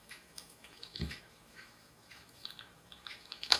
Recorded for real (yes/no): no